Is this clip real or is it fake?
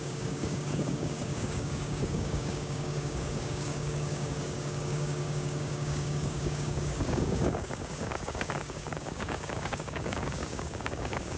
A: fake